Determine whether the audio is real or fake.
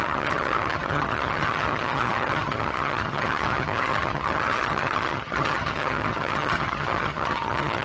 fake